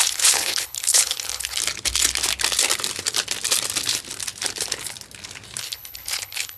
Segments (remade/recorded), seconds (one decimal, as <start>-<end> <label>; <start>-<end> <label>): 0.0-1.6 remade; 1.6-5.6 recorded; 5.6-6.6 remade